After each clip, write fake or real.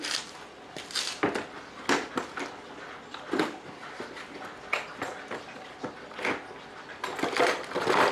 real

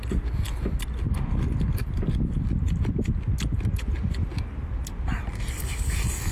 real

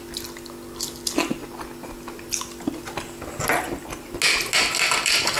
real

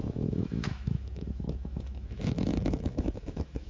fake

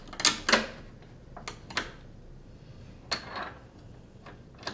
real